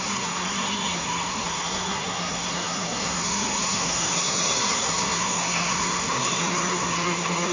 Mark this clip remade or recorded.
remade